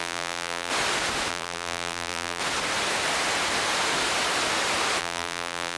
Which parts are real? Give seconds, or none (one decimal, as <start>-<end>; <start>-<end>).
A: 0.7-1.3; 2.4-5.0